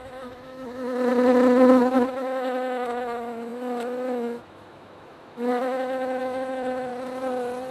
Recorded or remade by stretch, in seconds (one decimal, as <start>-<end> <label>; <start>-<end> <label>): 0.0-1.1 remade; 1.1-1.8 recorded; 1.8-6.9 remade; 6.9-7.7 recorded